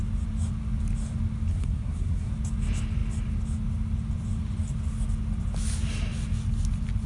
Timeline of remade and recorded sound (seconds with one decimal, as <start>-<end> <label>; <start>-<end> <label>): 0.0-1.5 recorded; 1.5-2.3 remade; 2.3-7.1 recorded